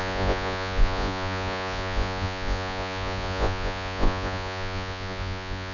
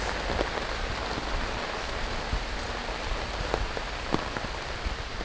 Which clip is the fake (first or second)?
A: first